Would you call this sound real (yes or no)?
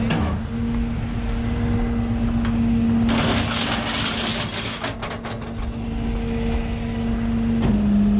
yes